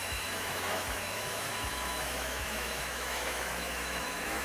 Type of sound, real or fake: fake